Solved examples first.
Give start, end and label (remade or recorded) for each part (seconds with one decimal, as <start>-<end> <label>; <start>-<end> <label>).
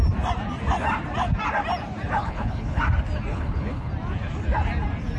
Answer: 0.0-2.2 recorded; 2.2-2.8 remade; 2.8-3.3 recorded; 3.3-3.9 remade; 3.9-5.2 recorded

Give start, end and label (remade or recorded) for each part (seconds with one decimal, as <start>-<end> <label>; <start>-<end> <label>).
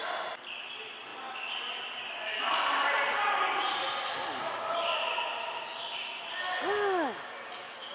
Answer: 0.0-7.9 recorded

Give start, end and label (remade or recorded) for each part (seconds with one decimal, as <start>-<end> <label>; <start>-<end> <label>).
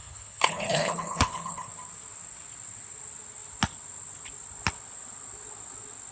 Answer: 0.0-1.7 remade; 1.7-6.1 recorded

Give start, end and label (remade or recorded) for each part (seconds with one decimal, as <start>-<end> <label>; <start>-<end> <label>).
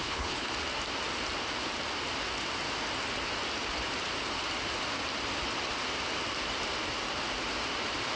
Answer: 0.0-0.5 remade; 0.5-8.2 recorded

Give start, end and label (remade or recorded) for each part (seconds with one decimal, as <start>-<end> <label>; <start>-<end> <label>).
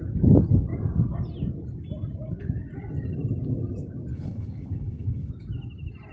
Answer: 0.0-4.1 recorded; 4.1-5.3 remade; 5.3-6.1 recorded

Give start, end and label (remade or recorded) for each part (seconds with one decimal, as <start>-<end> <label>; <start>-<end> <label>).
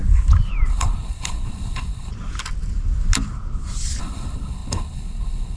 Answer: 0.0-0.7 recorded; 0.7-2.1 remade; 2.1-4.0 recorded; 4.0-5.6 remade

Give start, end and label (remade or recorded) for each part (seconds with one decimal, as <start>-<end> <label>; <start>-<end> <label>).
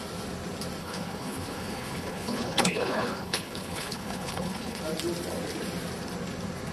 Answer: 0.0-0.8 recorded; 0.8-4.8 remade; 4.8-6.7 recorded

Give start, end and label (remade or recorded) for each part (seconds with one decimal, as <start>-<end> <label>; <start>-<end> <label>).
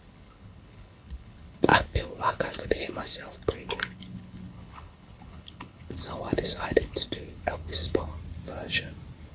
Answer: 0.0-8.1 remade; 8.1-9.3 recorded